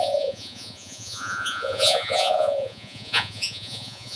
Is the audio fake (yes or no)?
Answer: yes